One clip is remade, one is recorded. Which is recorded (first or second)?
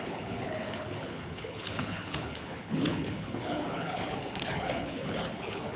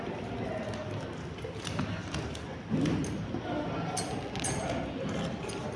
second